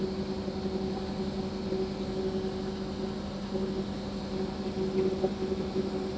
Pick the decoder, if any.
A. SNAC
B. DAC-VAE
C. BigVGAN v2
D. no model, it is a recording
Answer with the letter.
D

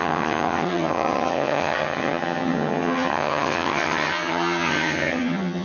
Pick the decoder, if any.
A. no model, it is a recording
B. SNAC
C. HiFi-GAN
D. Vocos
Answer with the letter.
C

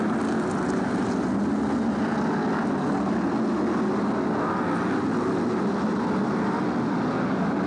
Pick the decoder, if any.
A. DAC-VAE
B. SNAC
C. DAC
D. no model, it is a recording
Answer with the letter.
D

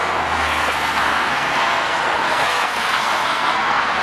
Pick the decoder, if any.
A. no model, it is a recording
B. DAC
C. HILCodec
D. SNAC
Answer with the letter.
D